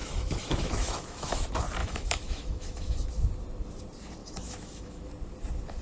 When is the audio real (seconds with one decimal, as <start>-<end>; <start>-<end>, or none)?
1.4-1.8; 3.1-4.2; 5.1-5.8